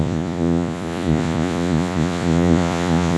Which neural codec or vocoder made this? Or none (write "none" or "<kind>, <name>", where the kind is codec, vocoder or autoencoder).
vocoder, Vocos